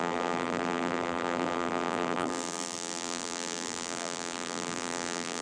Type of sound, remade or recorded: remade